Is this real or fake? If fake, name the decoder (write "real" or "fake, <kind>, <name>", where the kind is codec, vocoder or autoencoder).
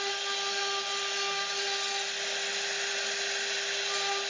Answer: real